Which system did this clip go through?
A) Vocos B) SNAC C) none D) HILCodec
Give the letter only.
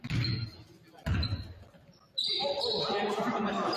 C